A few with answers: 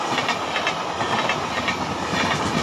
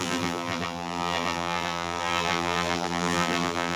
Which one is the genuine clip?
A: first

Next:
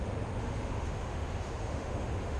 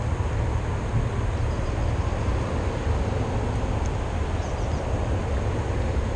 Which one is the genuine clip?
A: second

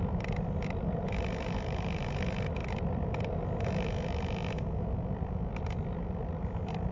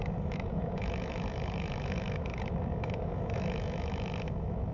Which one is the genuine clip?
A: first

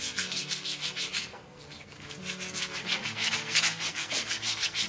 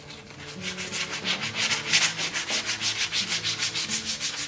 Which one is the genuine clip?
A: second